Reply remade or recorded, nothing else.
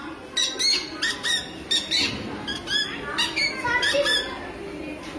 recorded